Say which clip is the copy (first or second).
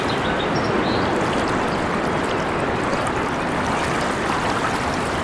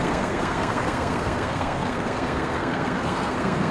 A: second